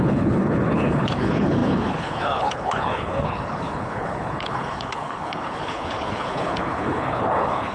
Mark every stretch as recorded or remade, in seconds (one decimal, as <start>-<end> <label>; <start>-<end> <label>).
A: 0.0-7.7 remade